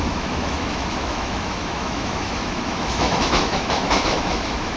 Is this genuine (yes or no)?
no